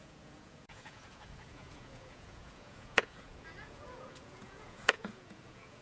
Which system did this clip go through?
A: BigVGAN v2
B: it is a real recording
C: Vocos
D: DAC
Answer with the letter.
C